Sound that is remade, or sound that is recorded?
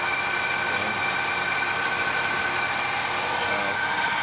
recorded